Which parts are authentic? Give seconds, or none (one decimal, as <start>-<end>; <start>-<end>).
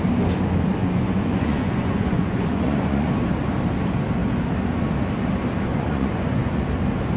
0.0-0.8; 3.1-5.7; 6.6-7.2